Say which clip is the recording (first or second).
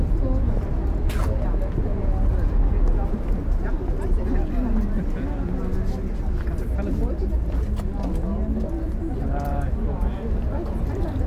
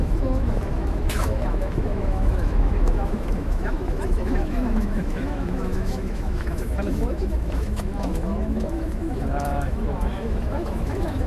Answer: first